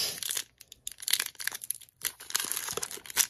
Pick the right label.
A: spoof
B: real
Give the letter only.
B